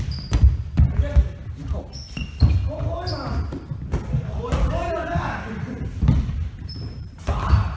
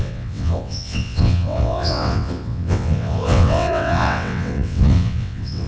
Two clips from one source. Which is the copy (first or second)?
second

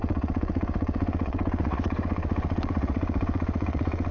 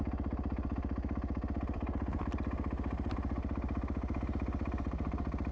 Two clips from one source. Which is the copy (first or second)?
first